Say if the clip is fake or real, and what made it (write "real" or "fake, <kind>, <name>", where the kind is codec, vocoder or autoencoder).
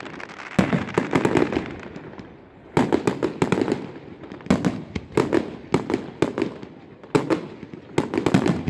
real